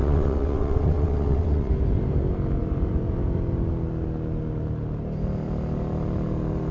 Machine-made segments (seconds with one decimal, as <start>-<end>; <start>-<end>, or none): 0.0-1.7